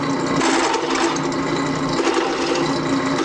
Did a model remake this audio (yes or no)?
no